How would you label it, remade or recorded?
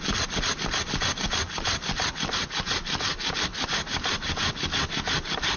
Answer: recorded